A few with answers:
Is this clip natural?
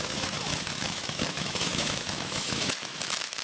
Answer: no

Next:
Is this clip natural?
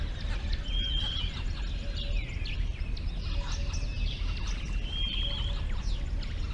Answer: yes